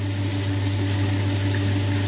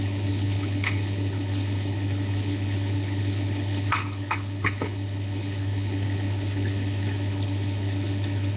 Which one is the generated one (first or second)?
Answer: second